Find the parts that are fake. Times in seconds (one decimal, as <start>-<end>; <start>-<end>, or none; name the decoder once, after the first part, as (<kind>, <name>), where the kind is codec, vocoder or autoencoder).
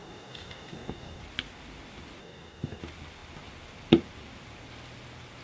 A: 0.0-1.2 (codec, DAC); 2.2-2.8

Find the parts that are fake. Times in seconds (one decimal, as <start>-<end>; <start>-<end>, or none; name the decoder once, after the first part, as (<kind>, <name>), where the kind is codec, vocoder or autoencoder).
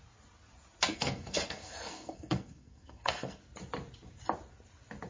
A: 0.9-3.4 (codec, SNAC)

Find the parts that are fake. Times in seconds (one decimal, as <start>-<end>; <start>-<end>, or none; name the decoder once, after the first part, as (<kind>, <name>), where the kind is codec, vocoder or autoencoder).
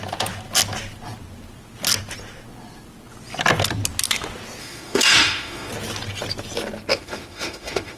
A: 4.6-5.7 (autoencoder, DAC-VAE); 6.9-8.0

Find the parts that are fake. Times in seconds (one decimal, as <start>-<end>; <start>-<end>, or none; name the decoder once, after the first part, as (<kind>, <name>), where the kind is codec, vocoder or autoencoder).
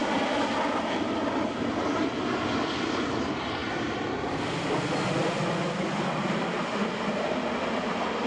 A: none